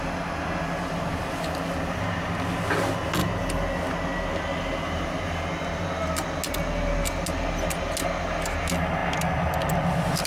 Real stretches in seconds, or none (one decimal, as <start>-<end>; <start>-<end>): 0.0-10.3